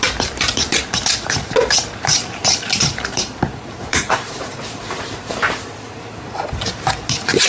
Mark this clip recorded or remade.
remade